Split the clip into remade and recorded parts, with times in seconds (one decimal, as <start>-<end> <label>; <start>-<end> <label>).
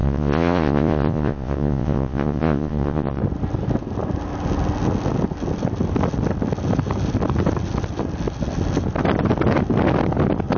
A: 0.0-3.2 remade; 3.2-10.6 recorded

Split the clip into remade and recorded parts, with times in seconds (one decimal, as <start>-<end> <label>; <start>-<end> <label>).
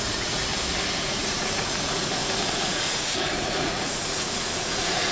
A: 0.0-0.5 remade; 0.5-1.0 recorded; 1.0-5.1 remade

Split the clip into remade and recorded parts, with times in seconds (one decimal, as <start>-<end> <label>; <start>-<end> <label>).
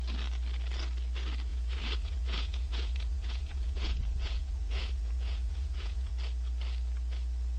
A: 0.0-1.5 recorded; 1.5-6.1 remade; 6.1-7.6 recorded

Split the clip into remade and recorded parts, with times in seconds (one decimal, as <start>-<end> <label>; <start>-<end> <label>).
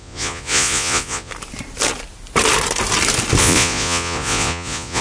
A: 0.0-1.3 remade; 1.3-3.4 recorded; 3.4-5.0 remade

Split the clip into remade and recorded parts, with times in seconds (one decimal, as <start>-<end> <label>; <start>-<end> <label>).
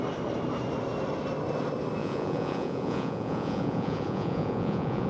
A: 0.0-2.0 recorded; 2.0-5.1 remade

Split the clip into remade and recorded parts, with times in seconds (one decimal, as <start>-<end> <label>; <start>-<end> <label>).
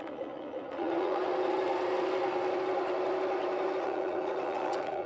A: 0.0-1.2 remade; 1.2-3.8 recorded; 3.8-5.1 remade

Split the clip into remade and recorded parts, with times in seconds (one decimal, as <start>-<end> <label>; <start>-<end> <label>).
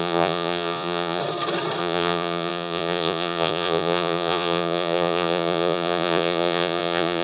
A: 0.0-1.2 remade; 1.2-1.8 recorded; 1.8-7.2 remade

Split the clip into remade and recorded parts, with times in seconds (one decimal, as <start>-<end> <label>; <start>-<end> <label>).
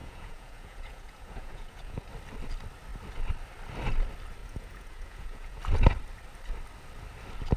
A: 0.0-2.1 remade; 2.1-4.4 recorded; 4.4-5.6 remade; 5.6-7.6 recorded